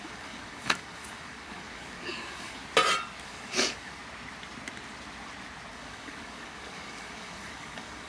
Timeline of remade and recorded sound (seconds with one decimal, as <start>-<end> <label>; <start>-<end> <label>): 0.0-2.6 remade; 2.6-3.2 recorded; 3.2-4.0 remade; 4.0-5.7 recorded; 5.7-8.1 remade